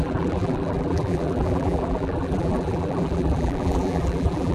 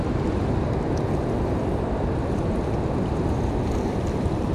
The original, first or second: second